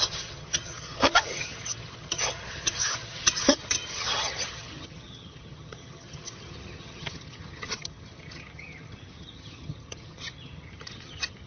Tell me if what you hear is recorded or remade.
remade